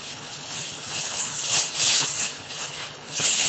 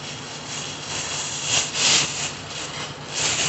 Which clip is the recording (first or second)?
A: second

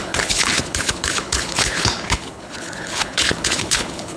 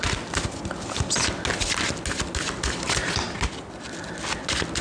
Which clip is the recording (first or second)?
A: second